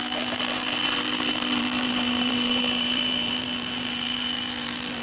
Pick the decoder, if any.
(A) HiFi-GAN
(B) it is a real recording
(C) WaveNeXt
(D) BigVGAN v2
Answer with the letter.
D